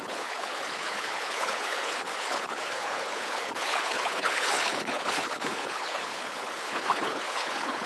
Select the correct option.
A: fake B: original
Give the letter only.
A